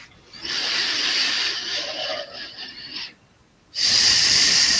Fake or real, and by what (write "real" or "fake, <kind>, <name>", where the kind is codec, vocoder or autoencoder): fake, vocoder, BigVGAN v2